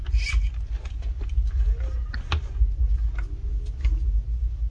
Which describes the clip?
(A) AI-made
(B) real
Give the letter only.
B